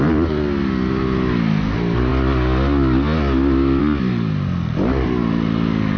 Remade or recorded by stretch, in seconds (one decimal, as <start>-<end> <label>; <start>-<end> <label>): 0.0-6.0 recorded